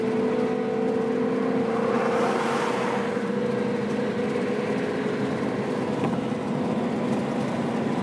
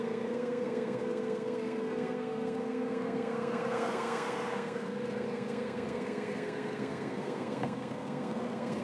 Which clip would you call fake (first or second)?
second